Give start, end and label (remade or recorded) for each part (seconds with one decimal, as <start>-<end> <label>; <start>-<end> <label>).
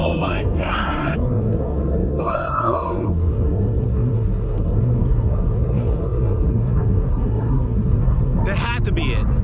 0.0-8.4 remade; 8.4-9.4 recorded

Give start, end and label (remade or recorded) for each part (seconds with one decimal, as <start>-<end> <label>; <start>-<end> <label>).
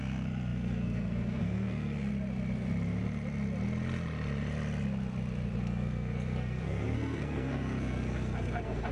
0.0-2.1 remade; 2.1-5.6 recorded; 5.6-8.9 remade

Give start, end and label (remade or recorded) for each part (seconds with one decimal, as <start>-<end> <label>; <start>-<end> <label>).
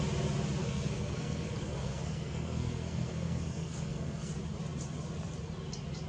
0.0-0.6 recorded; 0.6-4.3 remade; 4.3-6.1 recorded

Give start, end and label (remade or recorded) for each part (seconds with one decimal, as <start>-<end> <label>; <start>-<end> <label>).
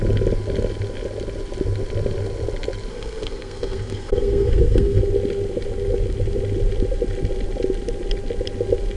0.0-2.9 recorded; 2.9-5.0 remade; 5.0-9.0 recorded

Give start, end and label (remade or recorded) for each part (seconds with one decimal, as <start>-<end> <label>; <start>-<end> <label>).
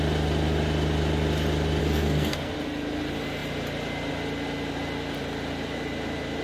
0.0-1.8 recorded; 1.8-2.5 remade; 2.5-6.4 recorded